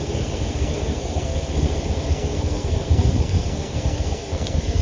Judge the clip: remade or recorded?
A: remade